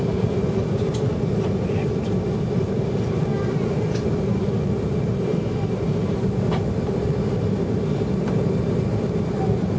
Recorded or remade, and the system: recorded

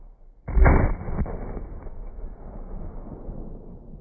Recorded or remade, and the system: recorded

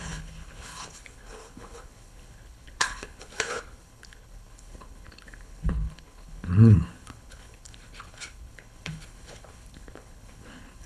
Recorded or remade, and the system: remade, codec, HILCodec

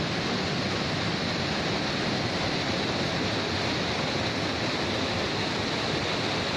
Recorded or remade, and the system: recorded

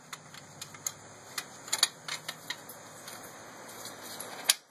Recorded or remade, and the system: recorded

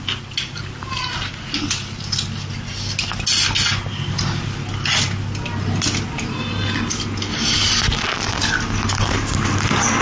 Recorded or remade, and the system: recorded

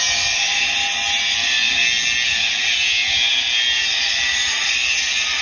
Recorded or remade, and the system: recorded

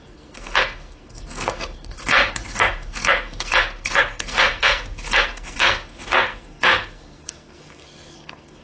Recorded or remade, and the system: remade, codec, SNAC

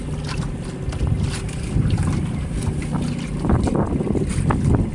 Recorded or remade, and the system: recorded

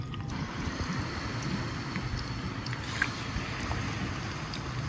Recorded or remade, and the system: recorded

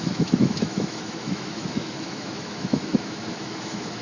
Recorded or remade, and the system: remade, autoencoder, DAC-VAE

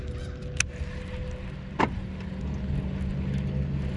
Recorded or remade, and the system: recorded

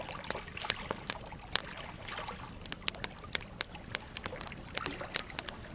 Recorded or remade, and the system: recorded